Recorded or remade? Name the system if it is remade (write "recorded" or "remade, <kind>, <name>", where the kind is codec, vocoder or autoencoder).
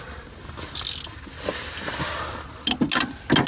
recorded